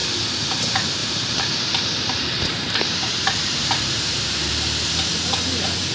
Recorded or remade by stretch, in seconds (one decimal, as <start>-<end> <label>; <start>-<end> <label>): 0.0-1.0 recorded; 1.0-4.5 remade; 4.5-5.9 recorded